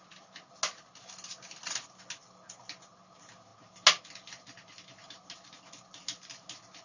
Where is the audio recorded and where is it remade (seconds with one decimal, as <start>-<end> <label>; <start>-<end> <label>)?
0.0-6.8 recorded